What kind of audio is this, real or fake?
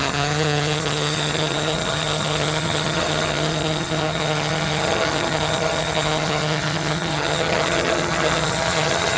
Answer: fake